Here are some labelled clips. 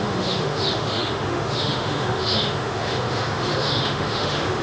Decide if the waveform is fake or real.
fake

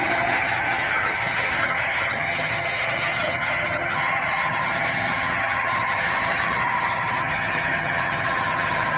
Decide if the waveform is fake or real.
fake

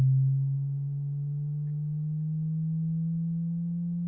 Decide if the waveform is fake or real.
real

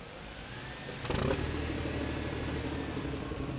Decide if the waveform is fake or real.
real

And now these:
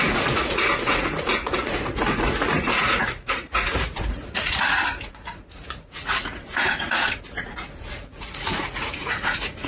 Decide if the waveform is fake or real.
fake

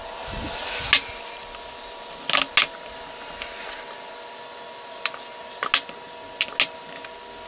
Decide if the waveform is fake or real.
real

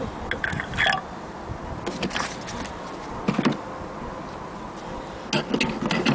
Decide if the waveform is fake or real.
real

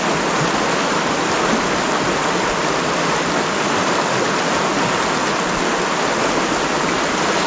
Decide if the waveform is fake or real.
real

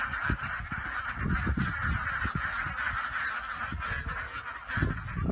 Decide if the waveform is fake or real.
real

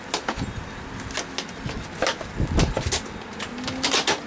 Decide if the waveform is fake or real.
real